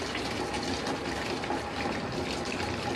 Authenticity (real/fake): real